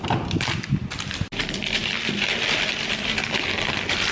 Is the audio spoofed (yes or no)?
no